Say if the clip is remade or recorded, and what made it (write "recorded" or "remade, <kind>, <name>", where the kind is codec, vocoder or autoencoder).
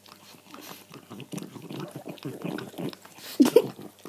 recorded